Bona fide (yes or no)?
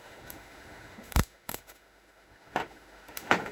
no